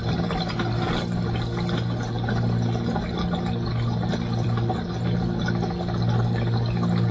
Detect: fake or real real